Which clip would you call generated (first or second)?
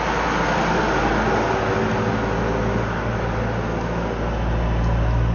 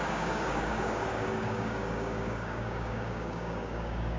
second